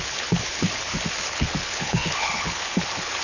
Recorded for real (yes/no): no